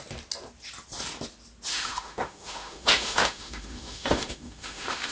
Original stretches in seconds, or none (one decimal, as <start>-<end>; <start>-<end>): 0.0-1.7